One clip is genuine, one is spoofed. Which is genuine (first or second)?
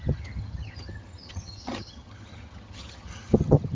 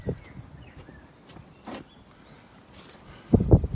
second